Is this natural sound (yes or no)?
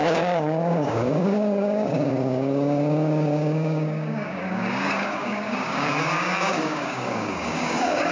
no